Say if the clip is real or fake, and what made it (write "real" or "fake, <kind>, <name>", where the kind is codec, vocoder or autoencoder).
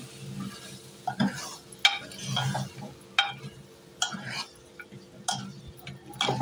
real